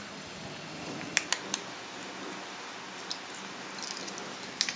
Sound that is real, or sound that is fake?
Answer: real